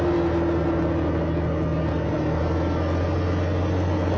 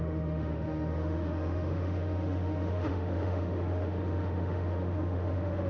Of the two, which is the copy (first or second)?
second